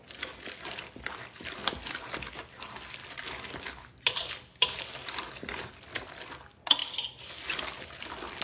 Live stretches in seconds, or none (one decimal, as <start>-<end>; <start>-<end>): 0.0-8.4